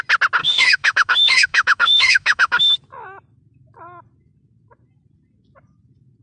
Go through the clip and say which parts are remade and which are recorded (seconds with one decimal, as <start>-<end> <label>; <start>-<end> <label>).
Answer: 0.0-0.4 recorded; 0.4-2.6 remade; 2.6-6.2 recorded